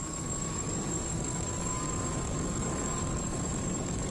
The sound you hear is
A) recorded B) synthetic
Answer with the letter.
B